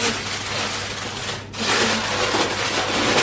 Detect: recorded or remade recorded